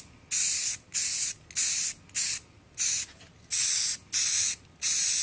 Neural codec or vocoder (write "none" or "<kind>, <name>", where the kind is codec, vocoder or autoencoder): none